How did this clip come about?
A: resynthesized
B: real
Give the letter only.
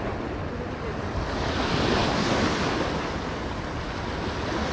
B